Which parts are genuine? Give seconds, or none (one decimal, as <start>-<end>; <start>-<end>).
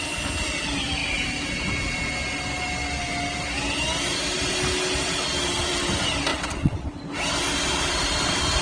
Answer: 0.0-6.3; 7.0-8.6